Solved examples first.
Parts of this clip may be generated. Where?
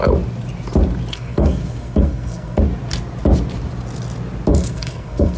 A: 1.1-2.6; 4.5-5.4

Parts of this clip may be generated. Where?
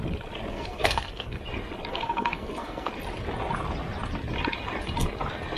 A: 0.5-1.4; 1.9-2.9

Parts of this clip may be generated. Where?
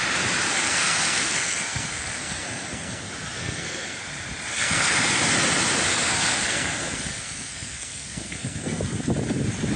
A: 0.5-3.0; 3.4-4.0; 4.5-5.1; 5.9-8.8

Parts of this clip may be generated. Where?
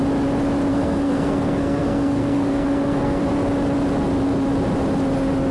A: 0.7-3.2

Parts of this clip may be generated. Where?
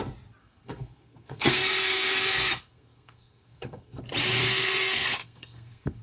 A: 0.4-4.0; 4.4-6.0